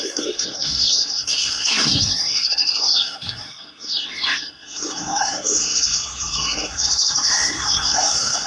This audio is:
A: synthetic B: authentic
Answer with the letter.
A